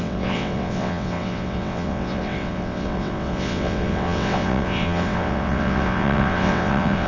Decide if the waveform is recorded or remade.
remade